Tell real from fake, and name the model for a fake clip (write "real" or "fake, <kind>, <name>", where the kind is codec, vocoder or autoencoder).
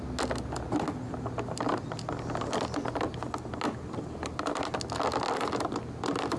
real